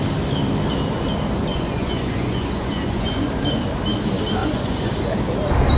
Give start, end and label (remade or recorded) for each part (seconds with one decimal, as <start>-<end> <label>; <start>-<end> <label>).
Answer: 0.0-1.5 recorded; 1.5-3.3 remade; 3.3-4.4 recorded; 4.4-4.9 remade; 4.9-5.8 recorded